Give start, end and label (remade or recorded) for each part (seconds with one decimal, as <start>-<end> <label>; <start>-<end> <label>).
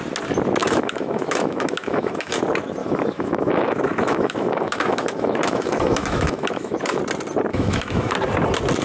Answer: 0.0-0.6 recorded; 0.6-2.4 remade; 2.4-2.8 recorded; 2.8-7.0 remade; 7.0-7.5 recorded; 7.5-8.1 remade; 8.1-8.8 recorded